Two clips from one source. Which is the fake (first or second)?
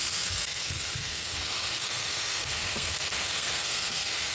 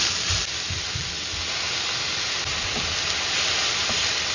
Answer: first